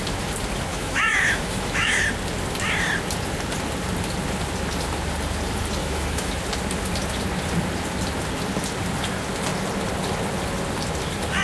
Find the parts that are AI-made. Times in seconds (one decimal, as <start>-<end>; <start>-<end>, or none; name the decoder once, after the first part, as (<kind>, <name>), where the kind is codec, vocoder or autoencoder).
0.7-2.0 (autoencoder, DAC-VAE); 5.8-6.3